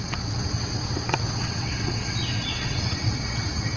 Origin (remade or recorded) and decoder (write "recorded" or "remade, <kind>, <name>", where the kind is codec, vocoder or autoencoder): remade, vocoder, WaveNeXt